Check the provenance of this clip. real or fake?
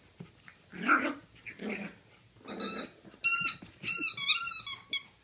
real